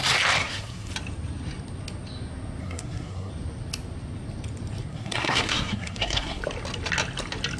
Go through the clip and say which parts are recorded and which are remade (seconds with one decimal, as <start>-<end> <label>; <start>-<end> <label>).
0.0-0.4 recorded; 0.4-0.9 remade; 0.9-2.6 recorded; 2.6-3.3 remade; 3.3-4.9 recorded; 4.9-6.4 remade; 6.4-7.6 recorded